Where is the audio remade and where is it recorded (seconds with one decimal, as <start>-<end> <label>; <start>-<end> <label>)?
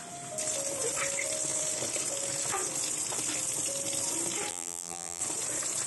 0.0-4.5 recorded; 4.5-5.2 remade; 5.2-5.9 recorded